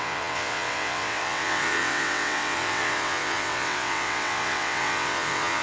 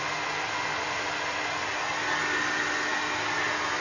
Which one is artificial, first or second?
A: first